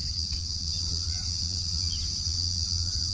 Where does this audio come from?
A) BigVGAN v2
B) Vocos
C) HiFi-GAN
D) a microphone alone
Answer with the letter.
B